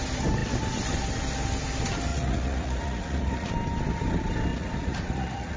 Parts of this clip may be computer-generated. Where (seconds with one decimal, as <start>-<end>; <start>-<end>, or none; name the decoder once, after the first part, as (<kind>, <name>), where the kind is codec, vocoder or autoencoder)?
2.1-3.5 (vocoder, Vocos); 4.5-5.6